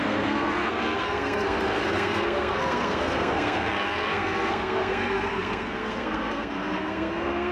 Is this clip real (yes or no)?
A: no